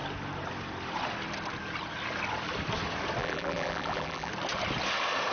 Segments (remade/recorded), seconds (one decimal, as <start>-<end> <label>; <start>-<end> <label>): 0.0-3.2 recorded; 3.2-4.3 remade; 4.3-5.3 recorded